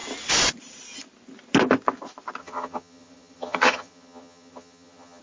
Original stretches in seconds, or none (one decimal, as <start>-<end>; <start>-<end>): 0.0-2.4